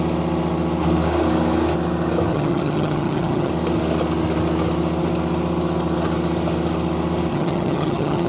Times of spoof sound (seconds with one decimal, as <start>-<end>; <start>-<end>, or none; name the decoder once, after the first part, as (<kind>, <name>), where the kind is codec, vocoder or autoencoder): 2.3-3.5 (vocoder, HiFi-GAN); 7.3-8.3